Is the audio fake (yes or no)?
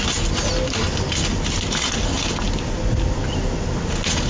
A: no